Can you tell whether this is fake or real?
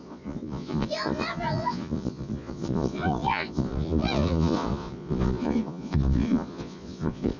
fake